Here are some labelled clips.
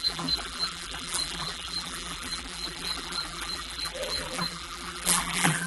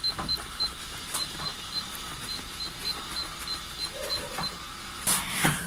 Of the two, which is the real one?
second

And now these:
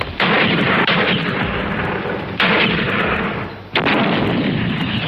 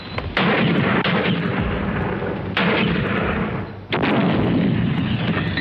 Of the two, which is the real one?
second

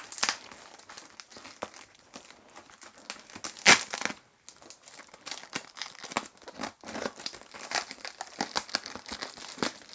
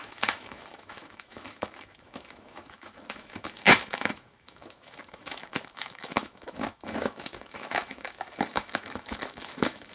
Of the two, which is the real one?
first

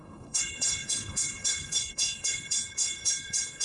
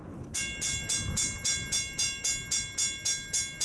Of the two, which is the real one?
second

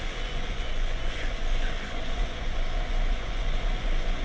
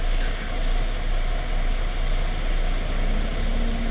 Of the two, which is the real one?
second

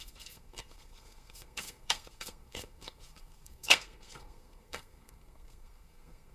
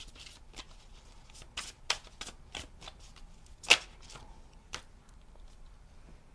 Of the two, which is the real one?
second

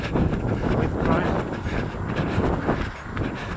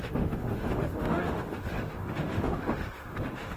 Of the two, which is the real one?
first